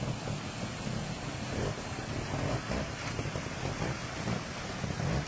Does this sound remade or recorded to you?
recorded